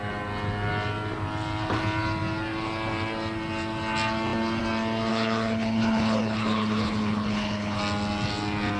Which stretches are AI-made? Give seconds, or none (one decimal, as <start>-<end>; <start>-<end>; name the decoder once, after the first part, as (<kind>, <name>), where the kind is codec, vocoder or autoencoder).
5.1-7.8 (codec, HILCodec)

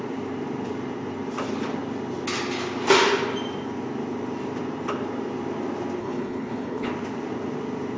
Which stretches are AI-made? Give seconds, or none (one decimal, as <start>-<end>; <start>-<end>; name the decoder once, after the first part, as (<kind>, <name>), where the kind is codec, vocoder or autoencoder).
6.0-6.9 (codec, HILCodec)

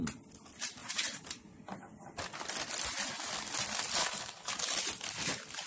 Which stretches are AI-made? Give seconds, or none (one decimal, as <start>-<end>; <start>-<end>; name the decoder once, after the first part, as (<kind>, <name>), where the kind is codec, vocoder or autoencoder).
4.0-4.5 (codec, HILCodec)

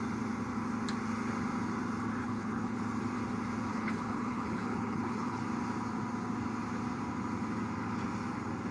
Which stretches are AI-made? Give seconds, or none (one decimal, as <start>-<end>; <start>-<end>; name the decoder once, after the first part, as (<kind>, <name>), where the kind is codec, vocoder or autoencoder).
2.2-2.8 (codec, HILCodec); 3.7-5.4

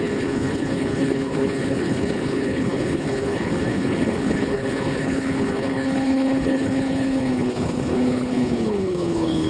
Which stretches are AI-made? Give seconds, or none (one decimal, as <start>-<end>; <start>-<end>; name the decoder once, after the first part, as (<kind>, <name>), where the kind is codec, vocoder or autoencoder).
0.0-9.5 (codec, HILCodec)

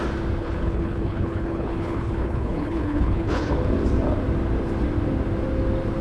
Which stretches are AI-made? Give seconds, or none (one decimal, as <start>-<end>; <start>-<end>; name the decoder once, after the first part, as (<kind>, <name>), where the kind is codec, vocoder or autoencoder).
0.4-3.5 (codec, HILCodec)

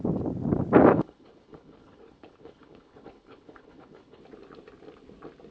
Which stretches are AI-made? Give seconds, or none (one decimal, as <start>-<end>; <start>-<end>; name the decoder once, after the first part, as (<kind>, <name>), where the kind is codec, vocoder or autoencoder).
0.9-4.2 (codec, HILCodec)